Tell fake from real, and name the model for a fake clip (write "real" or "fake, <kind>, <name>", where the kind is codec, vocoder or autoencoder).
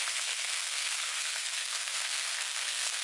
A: fake, codec, SNAC